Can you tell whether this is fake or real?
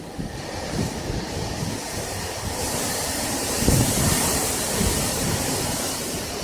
fake